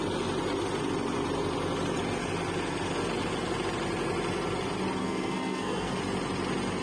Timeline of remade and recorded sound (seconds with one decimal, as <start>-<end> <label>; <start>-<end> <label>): 0.0-5.0 recorded; 5.0-6.0 remade; 6.0-6.8 recorded